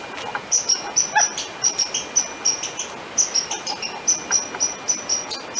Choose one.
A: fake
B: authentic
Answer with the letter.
B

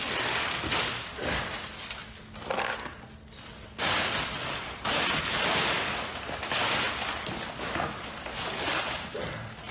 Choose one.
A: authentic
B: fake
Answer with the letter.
A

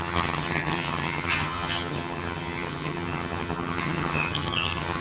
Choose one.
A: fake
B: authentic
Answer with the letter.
A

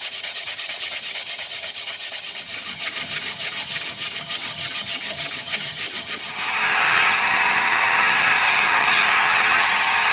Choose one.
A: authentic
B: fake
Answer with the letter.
B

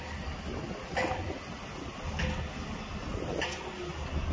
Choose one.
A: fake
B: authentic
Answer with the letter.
B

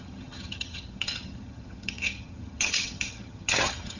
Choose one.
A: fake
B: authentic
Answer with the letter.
A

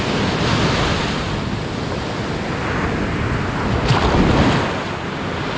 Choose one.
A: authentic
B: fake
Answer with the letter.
A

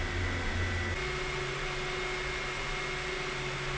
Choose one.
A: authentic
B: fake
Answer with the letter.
A